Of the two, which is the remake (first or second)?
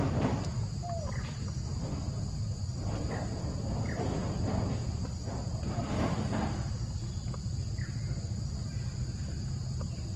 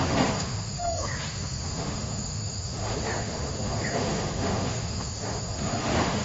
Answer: second